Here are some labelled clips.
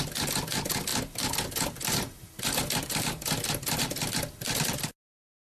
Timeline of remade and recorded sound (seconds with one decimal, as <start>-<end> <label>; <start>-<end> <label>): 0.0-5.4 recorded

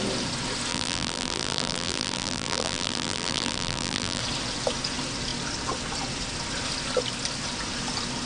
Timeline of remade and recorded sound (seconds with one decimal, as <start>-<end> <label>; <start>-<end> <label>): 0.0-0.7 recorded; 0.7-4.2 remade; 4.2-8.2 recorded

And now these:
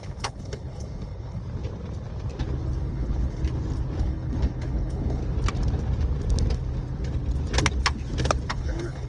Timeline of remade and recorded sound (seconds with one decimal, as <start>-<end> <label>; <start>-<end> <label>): 0.0-1.4 remade; 1.4-2.8 recorded; 2.8-3.4 remade; 3.4-4.0 recorded; 4.0-5.2 remade; 5.2-8.5 recorded; 8.5-9.1 remade

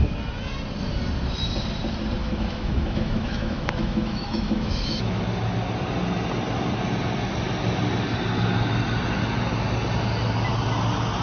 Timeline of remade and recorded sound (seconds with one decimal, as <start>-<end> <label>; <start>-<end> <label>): 0.0-2.2 recorded; 2.2-5.2 remade; 5.2-11.2 recorded

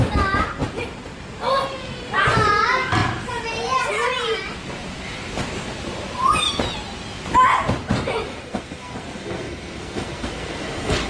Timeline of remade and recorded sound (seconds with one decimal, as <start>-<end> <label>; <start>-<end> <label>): 0.0-8.3 recorded; 8.3-11.1 remade